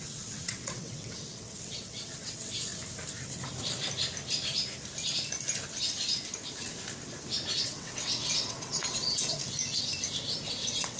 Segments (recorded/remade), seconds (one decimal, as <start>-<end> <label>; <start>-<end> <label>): 0.0-2.7 remade; 2.7-7.6 recorded; 7.6-9.4 remade; 9.4-10.5 recorded; 10.5-11.0 remade